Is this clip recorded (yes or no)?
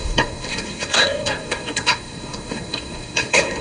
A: no